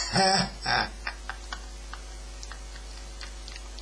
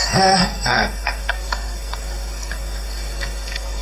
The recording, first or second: first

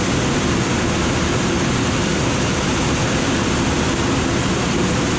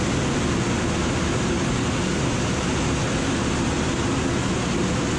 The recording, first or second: second